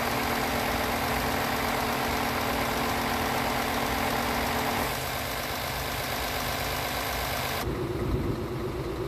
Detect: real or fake real